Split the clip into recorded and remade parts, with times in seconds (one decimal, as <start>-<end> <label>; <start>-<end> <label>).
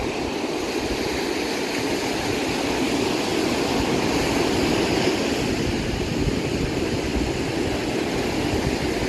0.0-9.1 recorded